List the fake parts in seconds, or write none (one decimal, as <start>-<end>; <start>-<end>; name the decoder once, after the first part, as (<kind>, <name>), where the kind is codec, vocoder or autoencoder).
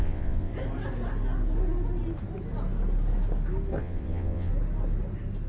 0.0-0.5 (vocoder, WaveNeXt); 3.8-4.5